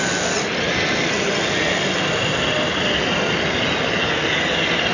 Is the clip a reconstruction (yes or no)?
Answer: no